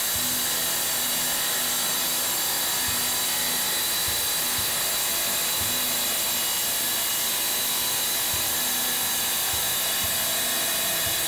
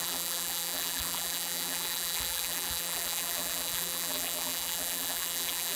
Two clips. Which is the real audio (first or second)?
first